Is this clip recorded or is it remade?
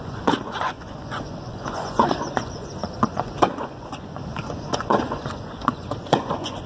remade